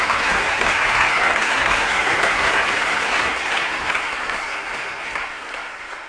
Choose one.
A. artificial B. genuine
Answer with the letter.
A